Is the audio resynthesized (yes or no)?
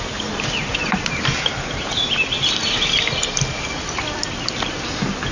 no